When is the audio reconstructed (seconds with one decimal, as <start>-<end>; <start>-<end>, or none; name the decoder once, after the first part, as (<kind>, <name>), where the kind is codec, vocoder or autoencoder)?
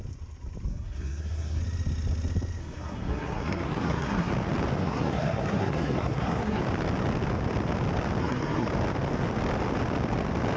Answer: 0.7-1.6 (codec, SNAC); 2.6-4.3; 4.8-6.6; 8.2-8.7